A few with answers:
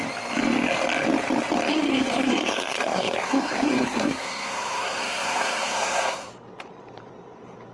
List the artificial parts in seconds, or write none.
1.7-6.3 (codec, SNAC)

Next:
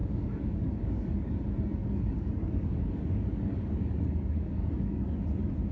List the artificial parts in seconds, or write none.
0.0-1.3 (codec, DAC); 1.8-5.2

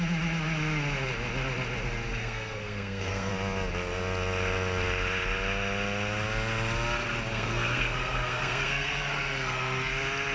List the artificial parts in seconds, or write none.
2.1-3.3 (codec, SNAC); 7.3-9.9

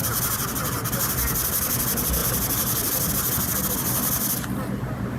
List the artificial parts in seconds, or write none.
none

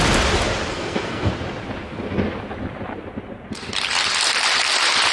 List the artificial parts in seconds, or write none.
0.7-1.3 (codec, SNAC)

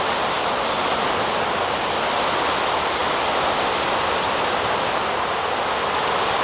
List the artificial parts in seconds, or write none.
none